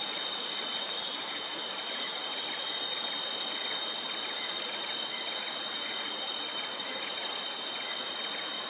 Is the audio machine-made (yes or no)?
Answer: no